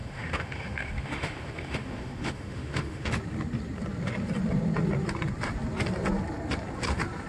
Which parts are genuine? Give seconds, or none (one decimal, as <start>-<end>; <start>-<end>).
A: 3.1-7.3